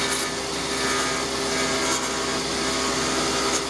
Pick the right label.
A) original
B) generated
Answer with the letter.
A